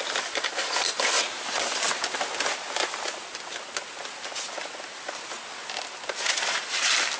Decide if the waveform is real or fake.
real